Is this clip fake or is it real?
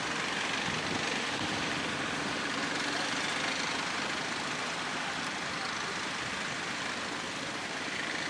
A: real